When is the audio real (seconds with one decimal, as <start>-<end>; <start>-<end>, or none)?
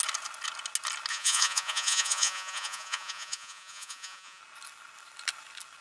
0.0-1.1; 4.4-5.8